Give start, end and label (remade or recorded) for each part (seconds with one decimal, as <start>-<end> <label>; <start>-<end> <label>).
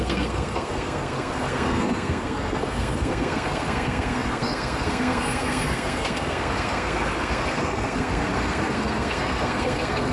0.0-10.1 remade